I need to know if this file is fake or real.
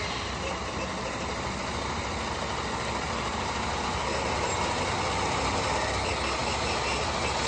real